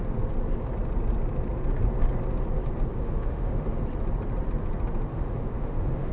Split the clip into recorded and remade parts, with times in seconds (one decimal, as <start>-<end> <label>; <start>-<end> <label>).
0.0-2.9 recorded; 2.9-3.8 remade; 3.8-5.1 recorded; 5.1-6.1 remade